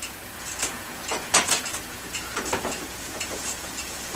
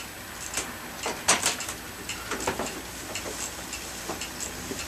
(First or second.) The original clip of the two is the second